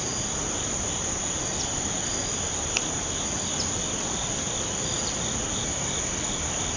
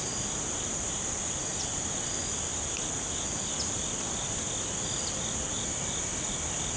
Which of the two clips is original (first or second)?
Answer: second